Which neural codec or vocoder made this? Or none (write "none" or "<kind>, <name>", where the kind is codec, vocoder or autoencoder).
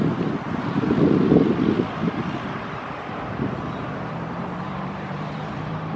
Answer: vocoder, BigVGAN v2